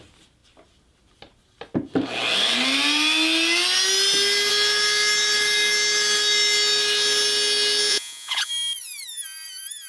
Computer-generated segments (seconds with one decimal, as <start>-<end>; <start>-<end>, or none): 7.9-8.5